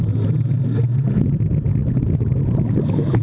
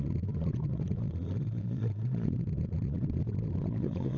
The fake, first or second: second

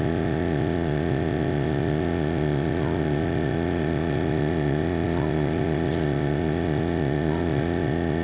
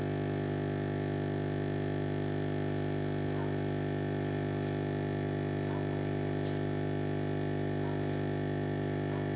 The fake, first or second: first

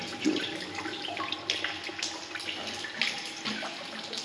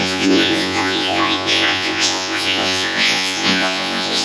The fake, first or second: second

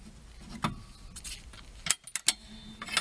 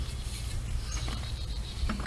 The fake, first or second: second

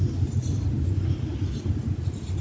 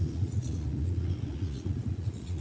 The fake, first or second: second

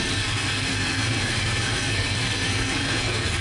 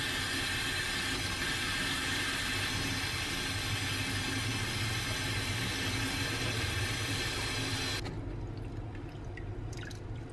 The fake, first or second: first